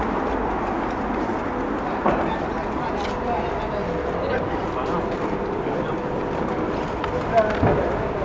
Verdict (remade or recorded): recorded